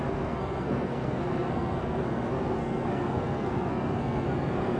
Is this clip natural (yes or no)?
no